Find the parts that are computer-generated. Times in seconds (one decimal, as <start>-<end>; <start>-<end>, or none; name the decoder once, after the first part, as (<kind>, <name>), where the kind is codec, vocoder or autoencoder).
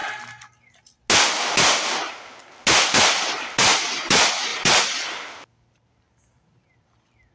none